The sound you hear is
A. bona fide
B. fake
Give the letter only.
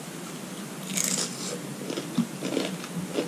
A